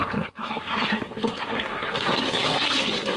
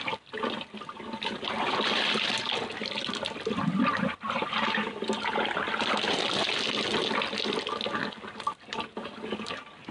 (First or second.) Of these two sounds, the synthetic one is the first